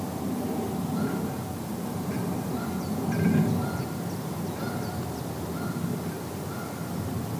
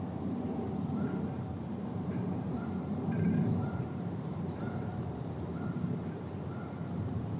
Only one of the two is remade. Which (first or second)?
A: second